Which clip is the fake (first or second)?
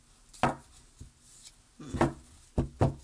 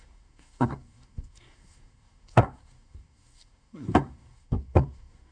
second